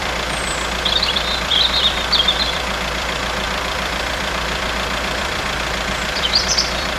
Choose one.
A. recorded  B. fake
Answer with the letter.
B